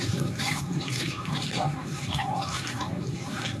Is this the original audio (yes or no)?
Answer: no